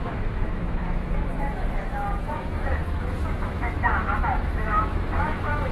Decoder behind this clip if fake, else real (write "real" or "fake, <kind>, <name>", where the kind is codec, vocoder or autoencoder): fake, autoencoder, DAC-VAE